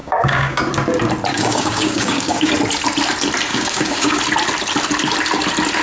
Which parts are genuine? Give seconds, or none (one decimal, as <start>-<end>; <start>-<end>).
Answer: 0.7-1.3; 2.5-3.5; 4.2-5.8